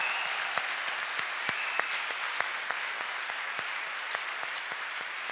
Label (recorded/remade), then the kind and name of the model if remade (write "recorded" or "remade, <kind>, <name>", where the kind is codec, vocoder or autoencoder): recorded